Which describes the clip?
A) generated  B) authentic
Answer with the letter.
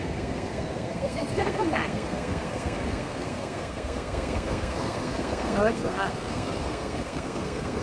A